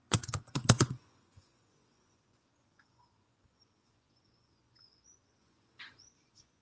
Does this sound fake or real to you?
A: fake